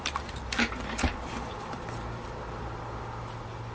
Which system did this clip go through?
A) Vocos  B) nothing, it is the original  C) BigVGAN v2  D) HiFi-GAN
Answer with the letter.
C